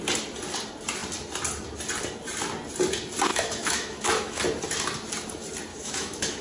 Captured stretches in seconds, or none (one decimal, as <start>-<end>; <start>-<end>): 0.0-3.3; 4.4-5.7

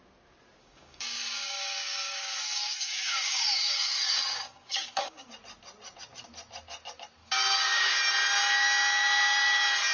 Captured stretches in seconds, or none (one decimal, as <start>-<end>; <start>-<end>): 0.0-0.6; 5.3-7.2; 7.9-9.9

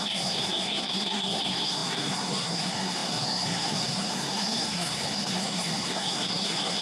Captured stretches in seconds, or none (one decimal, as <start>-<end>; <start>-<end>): none

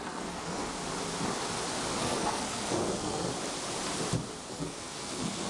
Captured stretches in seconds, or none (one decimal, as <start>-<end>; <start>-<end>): 0.6-2.0; 3.3-4.5